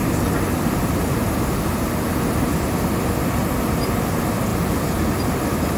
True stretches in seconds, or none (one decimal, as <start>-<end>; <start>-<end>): 0.0-5.8